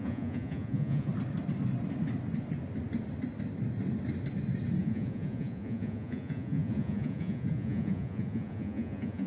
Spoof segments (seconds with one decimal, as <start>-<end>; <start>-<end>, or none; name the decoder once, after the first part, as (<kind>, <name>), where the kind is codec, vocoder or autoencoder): 0.0-1.1 (vocoder, Vocos); 4.8-9.3